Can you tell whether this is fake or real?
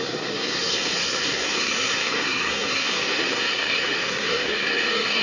fake